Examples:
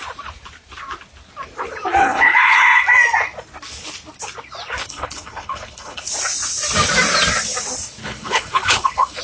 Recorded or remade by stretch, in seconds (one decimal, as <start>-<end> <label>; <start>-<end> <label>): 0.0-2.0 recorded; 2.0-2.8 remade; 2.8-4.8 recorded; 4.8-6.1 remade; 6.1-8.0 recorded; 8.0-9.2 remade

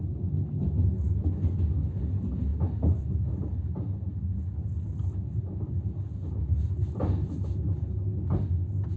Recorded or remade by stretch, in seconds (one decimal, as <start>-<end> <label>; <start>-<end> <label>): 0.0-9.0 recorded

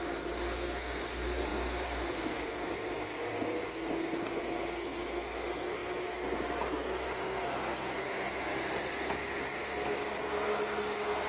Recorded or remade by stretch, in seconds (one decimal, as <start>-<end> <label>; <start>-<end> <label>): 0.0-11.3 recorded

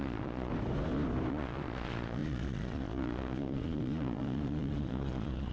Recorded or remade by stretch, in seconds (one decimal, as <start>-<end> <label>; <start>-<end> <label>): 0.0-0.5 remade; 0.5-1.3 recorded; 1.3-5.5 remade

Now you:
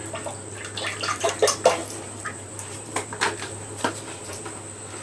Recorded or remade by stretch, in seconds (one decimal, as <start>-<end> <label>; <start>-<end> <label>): 0.0-1.8 recorded; 1.8-4.5 remade; 4.5-5.0 recorded

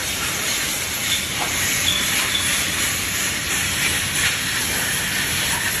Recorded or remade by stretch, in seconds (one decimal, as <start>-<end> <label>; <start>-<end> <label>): 0.0-3.5 remade; 3.5-5.8 recorded

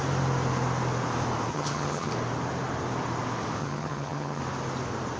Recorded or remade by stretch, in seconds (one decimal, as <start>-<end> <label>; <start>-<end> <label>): 0.0-1.5 recorded; 1.5-2.1 remade; 2.1-3.6 recorded; 3.6-4.4 remade; 4.4-5.2 recorded

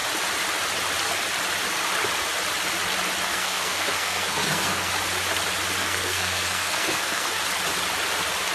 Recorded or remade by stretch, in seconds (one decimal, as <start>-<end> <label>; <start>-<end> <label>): 0.0-3.3 recorded; 3.3-4.9 remade; 4.9-5.8 recorded; 5.8-7.4 remade; 7.4-8.5 recorded